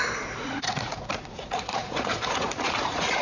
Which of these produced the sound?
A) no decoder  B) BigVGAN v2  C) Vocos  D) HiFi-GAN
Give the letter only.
C